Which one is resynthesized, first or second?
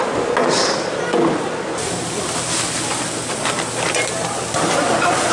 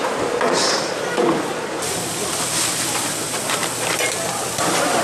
second